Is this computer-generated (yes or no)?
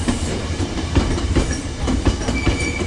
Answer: yes